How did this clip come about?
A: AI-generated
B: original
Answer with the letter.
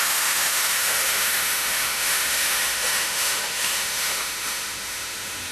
A